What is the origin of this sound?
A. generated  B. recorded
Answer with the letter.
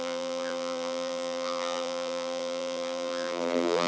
A